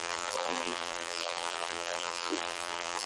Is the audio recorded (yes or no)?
no